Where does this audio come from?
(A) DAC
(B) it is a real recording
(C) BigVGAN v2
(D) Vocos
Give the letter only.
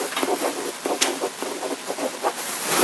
B